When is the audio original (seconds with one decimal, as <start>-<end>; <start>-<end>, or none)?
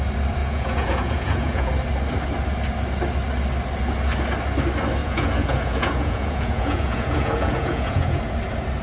0.0-0.4; 1.7-5.0; 8.2-8.8